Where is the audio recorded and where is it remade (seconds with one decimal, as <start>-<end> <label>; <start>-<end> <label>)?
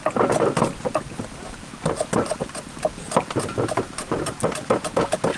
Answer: 0.0-5.4 recorded